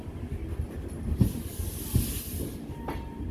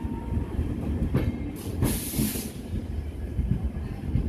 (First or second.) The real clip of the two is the first